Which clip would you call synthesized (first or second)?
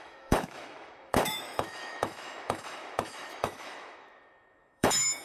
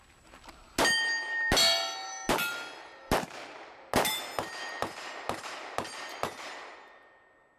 first